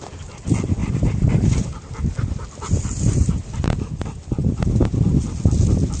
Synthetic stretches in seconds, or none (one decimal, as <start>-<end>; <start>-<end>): 0.8-1.7; 4.4-5.0